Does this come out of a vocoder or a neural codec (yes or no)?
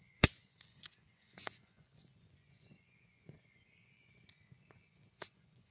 yes